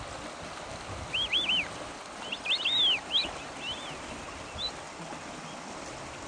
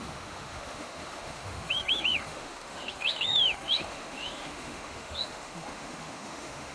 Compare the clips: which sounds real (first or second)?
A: first